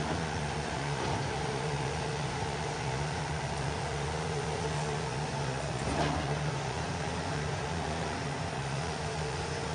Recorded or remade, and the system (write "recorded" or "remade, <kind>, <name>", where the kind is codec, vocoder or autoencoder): remade, vocoder, Vocos